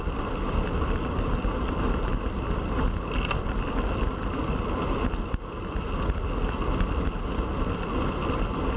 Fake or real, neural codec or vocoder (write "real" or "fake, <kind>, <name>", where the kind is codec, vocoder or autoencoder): real